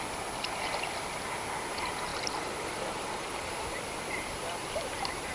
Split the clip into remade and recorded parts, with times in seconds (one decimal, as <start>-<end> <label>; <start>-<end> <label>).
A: 0.0-2.1 recorded; 2.1-3.5 remade; 3.5-5.3 recorded